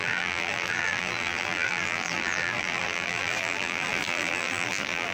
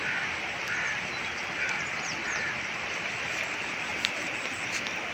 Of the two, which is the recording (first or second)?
second